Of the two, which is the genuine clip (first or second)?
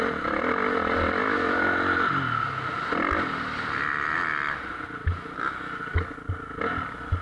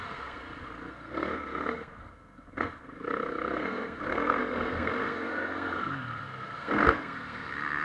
first